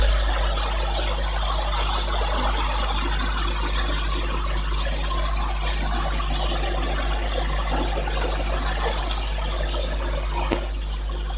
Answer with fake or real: real